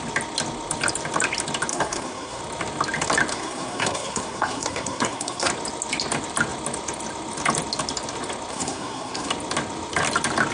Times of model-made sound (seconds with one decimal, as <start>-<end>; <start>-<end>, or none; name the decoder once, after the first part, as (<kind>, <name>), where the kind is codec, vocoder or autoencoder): 1.7-2.4 (codec, SNAC); 3.3-5.5; 8.5-9.3